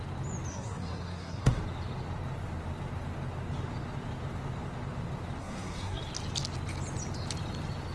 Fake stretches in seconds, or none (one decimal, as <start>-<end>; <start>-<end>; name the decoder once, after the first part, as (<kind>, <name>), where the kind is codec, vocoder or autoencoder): 0.5-1.6 (codec, SNAC); 5.4-6.0